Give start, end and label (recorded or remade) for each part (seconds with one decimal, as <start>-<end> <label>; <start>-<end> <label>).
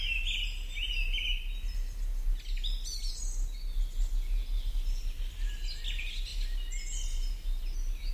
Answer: 0.0-8.1 recorded